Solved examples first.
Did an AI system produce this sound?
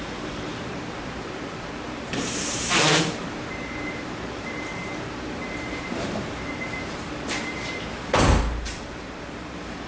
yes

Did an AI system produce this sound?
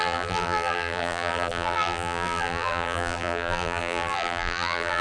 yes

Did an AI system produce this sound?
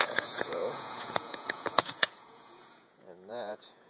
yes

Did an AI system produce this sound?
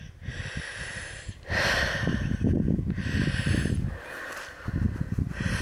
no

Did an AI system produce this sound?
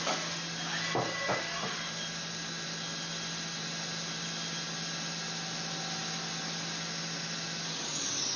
no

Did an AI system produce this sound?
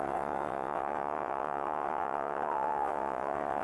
yes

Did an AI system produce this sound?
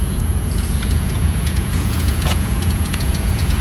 yes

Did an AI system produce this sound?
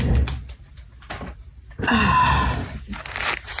yes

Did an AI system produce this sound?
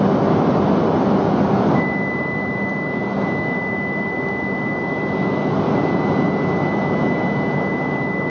no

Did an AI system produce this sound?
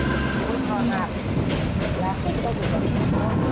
no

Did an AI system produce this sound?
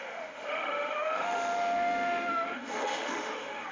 yes